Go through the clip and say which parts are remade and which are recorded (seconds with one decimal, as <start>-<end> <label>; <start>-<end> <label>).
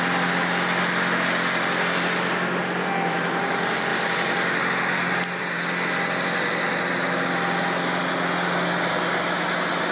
0.0-2.6 recorded; 2.6-3.4 remade; 3.4-9.9 recorded